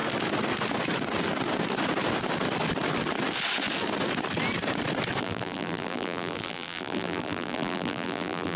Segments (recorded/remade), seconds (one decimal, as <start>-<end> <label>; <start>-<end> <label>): 0.0-5.2 recorded; 5.2-8.6 remade